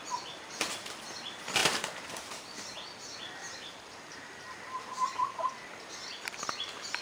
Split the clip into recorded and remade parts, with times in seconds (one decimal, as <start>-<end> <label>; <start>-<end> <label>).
0.0-1.6 recorded; 1.6-2.5 remade; 2.5-3.4 recorded; 3.4-5.5 remade; 5.5-7.0 recorded

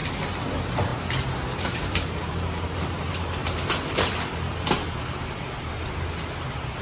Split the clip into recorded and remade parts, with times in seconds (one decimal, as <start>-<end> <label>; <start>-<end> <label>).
0.0-0.5 recorded; 0.5-3.4 remade; 3.4-6.3 recorded; 6.3-6.8 remade

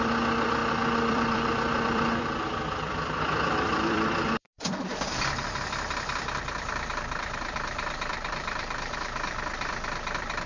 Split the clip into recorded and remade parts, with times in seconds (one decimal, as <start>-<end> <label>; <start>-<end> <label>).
0.0-0.6 remade; 0.6-1.1 recorded; 1.1-10.5 remade